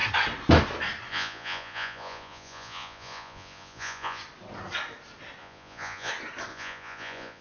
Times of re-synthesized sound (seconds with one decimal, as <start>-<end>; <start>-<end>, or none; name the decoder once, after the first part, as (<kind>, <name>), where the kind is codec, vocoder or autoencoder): 1.1-4.2 (vocoder, Vocos); 5.4-6.1; 6.5-7.4